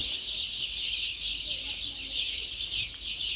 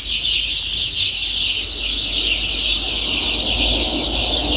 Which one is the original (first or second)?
second